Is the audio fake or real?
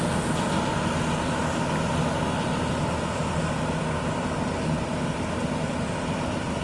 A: real